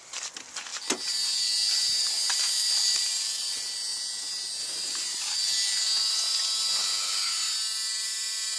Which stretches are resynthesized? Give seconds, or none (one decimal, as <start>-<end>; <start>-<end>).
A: none